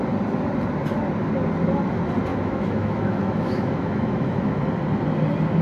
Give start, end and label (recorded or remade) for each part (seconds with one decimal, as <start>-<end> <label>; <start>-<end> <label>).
0.0-2.3 recorded; 2.3-4.5 remade; 4.5-5.6 recorded